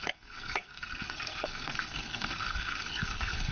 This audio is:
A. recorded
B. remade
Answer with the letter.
B